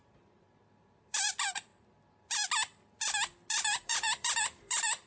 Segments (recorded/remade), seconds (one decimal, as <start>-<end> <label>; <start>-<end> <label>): 0.0-1.7 remade; 1.7-3.5 recorded; 3.5-5.1 remade